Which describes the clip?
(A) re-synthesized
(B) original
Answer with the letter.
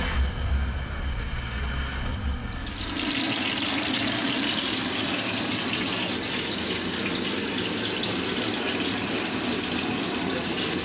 B